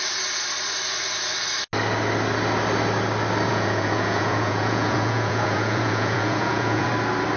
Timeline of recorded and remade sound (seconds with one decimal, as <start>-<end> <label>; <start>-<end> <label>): 0.0-3.5 recorded; 3.5-6.9 remade; 6.9-7.4 recorded

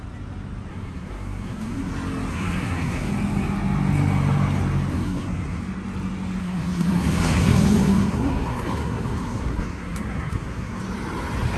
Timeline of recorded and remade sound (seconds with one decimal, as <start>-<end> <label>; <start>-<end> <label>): 0.0-0.7 recorded; 0.7-1.9 remade; 1.9-2.3 recorded; 2.3-3.1 remade; 3.1-4.9 recorded; 4.9-5.6 remade; 5.6-6.4 recorded; 6.4-10.8 remade; 10.8-11.6 recorded

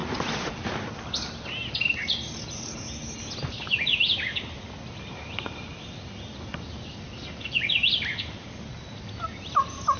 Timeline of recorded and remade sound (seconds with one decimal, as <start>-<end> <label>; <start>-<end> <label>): 0.0-10.0 recorded